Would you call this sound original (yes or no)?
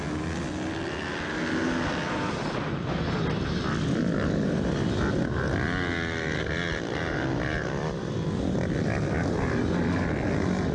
yes